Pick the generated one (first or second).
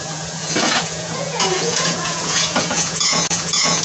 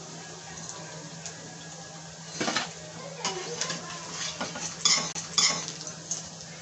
first